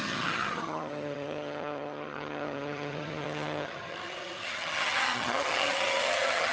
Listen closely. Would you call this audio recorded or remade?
remade